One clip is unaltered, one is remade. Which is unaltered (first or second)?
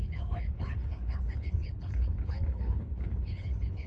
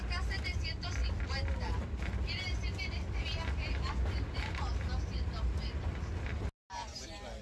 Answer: second